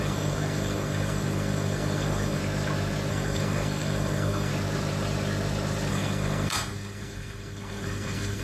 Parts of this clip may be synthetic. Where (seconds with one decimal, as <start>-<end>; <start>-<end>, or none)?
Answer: 0.0-2.4; 3.1-4.5; 5.9-8.4